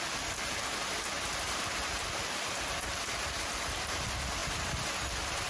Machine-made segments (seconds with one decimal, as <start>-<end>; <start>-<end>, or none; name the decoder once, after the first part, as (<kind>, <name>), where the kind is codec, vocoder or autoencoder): none